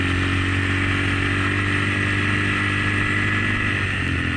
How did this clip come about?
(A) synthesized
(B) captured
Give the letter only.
B